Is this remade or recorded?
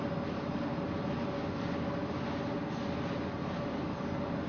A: recorded